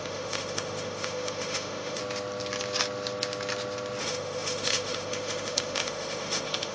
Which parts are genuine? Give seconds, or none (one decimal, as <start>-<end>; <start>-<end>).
2.0-4.0